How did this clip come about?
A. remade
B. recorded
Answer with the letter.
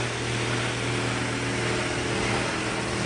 B